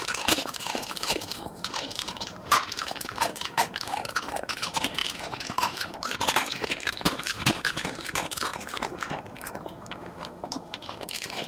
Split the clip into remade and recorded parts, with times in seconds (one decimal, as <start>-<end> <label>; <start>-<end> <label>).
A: 0.0-11.5 remade